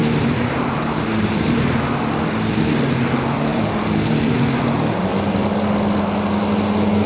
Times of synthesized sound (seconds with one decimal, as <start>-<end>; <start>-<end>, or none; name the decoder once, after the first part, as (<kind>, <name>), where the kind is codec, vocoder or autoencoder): 0.0-2.1 (vocoder, BigVGAN v2); 3.5-4.6

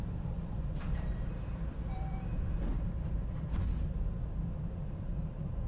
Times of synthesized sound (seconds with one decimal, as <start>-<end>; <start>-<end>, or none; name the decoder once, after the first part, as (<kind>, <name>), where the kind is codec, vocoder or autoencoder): 0.0-3.6 (vocoder, BigVGAN v2); 4.4-5.7

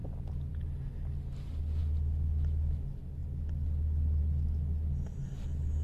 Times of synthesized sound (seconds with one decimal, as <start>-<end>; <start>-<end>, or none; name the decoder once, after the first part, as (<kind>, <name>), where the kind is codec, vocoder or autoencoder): none